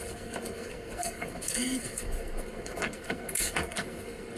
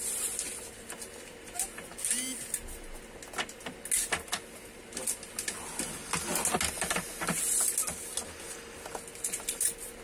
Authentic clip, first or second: second